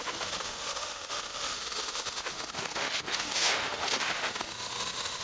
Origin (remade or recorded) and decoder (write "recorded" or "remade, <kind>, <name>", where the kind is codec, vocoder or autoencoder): remade, autoencoder, DAC-VAE